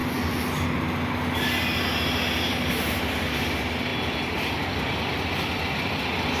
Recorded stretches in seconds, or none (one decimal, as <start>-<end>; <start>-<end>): 0.0-2.9; 3.9-4.7